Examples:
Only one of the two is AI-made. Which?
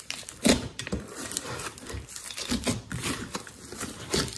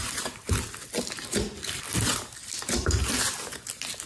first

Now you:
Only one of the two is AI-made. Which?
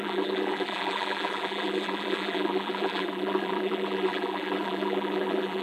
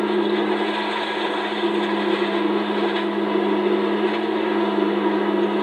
first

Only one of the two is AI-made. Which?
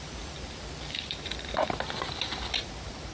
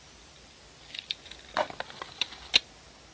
first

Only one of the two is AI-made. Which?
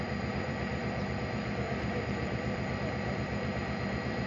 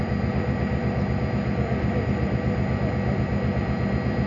first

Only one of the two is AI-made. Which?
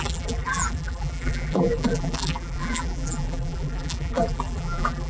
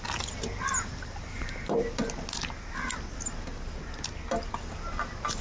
first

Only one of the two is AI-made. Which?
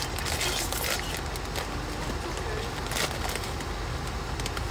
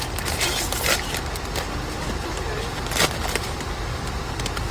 second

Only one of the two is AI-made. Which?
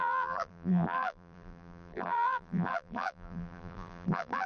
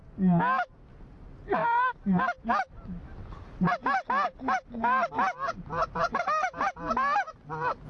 first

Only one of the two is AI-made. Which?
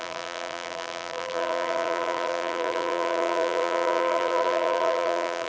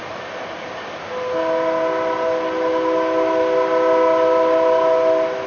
first